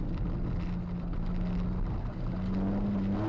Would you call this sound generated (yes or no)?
no